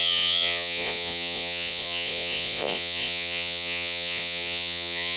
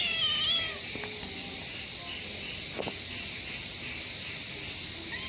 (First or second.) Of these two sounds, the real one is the second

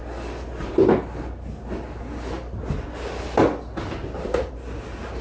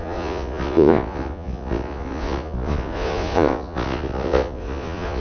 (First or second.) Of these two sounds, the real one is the first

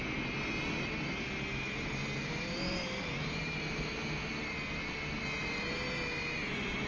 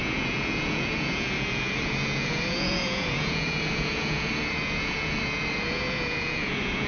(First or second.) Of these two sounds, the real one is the first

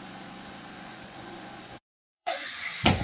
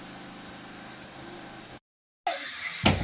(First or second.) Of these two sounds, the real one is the second